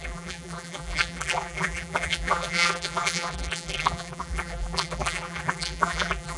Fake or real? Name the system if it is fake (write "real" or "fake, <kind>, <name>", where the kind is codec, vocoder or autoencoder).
fake, vocoder, BigVGAN v2